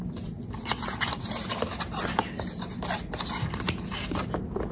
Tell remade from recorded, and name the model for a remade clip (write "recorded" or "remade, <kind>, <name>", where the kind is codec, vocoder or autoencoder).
remade, vocoder, BigVGAN v2